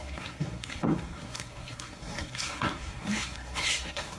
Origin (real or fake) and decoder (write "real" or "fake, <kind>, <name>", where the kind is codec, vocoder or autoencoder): fake, codec, SNAC